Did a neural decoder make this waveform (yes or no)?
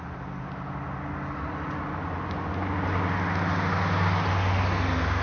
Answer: no